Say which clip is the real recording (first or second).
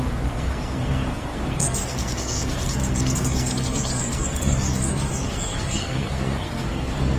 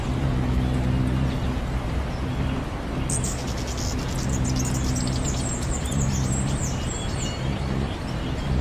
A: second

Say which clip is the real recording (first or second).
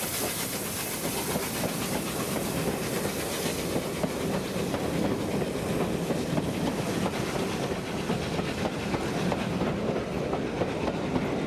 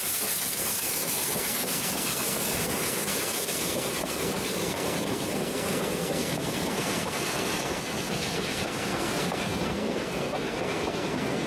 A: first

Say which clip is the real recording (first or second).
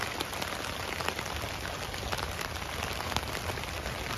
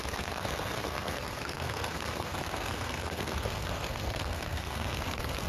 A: first